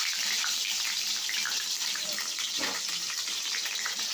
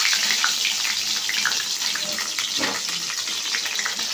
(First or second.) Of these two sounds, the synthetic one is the first